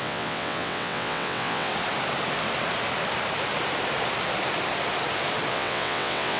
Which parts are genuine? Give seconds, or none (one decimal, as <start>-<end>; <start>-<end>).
1.7-5.5